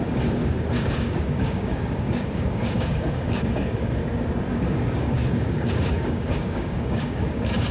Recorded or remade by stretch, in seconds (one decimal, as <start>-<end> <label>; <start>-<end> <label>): 0.0-4.0 remade; 4.0-4.5 recorded; 4.5-7.7 remade